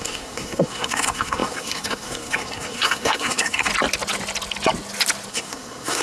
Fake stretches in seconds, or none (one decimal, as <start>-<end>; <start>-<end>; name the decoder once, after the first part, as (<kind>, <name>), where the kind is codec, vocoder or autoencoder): 0.0-3.7 (codec, SNAC); 5.3-6.0